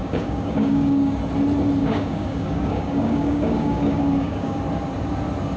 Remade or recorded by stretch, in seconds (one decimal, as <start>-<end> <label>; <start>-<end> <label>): 0.0-1.2 remade; 1.2-1.8 recorded; 1.8-4.6 remade; 4.6-5.6 recorded